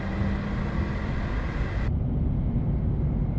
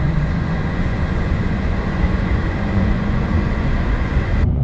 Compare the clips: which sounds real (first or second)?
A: first